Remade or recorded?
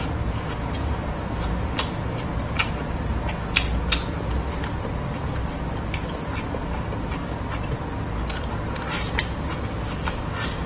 recorded